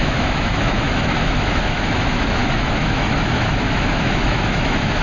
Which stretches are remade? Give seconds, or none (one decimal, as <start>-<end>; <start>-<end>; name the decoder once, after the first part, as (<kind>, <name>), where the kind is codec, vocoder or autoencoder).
0.0-5.0 (autoencoder, DAC-VAE)